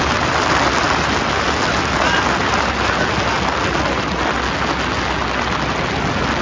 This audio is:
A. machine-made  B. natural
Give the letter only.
B